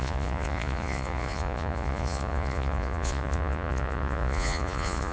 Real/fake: fake